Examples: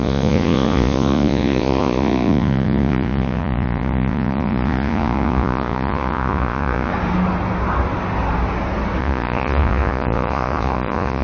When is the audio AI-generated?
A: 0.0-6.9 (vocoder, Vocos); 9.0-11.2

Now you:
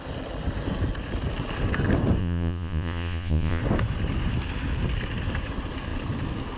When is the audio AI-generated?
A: 2.2-3.6 (vocoder, Vocos)

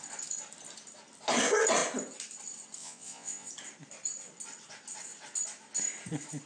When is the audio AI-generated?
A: 2.8-3.5 (vocoder, Vocos)

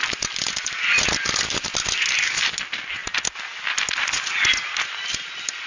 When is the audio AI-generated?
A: none